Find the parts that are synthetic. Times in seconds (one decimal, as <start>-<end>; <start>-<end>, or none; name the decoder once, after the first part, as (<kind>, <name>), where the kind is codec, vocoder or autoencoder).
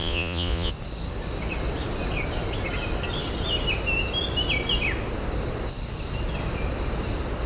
0.0-0.7 (vocoder, Vocos)